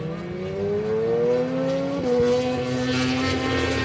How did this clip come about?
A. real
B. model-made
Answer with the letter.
A